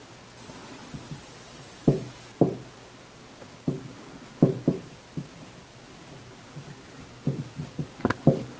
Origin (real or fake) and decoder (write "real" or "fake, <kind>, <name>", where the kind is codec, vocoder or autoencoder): real